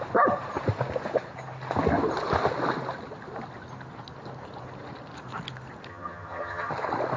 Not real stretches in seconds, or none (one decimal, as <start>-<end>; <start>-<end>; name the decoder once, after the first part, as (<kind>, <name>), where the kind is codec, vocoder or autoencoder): 5.9-6.7 (vocoder, HiFi-GAN)